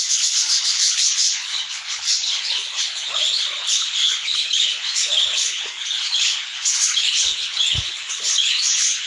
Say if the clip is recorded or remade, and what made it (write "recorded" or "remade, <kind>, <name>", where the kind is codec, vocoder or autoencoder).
remade, codec, HILCodec